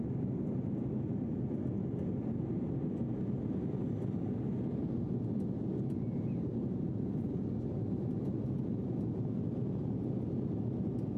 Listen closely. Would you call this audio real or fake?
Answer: real